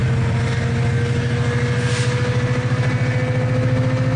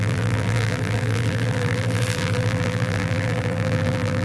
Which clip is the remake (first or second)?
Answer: second